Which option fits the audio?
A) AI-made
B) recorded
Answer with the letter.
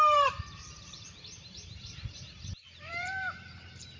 A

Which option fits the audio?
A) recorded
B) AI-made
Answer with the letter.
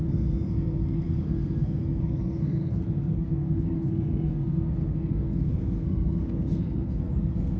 B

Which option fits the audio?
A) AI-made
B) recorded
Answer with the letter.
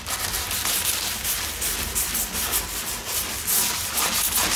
B